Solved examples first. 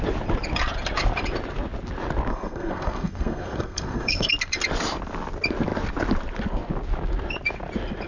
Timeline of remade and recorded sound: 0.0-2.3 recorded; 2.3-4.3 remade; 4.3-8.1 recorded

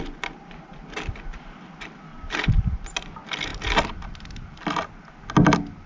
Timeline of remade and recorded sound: 0.0-2.1 recorded; 2.1-2.9 remade; 2.9-3.5 recorded; 3.5-5.1 remade; 5.1-5.9 recorded

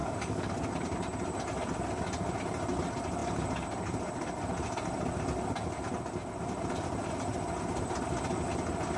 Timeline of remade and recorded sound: 0.0-0.6 remade; 0.6-9.0 recorded

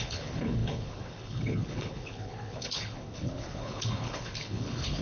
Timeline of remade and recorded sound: 0.0-5.0 remade

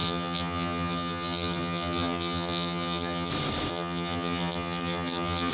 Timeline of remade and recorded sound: 0.0-3.3 remade; 3.3-3.7 recorded; 3.7-5.5 remade

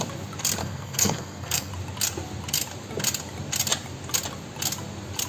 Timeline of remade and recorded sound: 0.0-0.6 recorded; 0.6-1.7 remade; 1.7-5.3 recorded

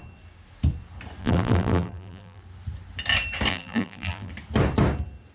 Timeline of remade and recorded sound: 0.0-1.2 recorded; 1.2-2.4 remade; 2.4-3.5 recorded; 3.5-4.3 remade; 4.3-5.3 recorded